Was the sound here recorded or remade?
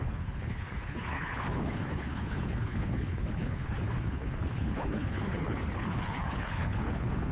remade